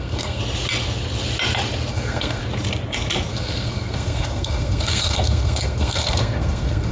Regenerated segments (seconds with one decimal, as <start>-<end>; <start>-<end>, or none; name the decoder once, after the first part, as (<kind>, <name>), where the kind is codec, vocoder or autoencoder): 0.0-0.4 (codec, SNAC); 1.9-2.4; 3.3-6.9